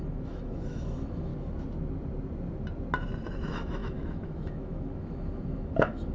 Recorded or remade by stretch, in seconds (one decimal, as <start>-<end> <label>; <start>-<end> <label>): 0.0-1.3 remade; 1.3-3.3 recorded; 3.3-6.1 remade